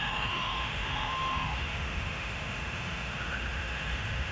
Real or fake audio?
fake